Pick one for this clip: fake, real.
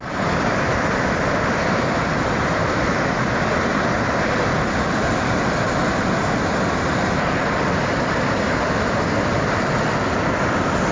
real